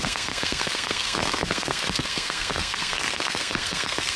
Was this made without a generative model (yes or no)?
no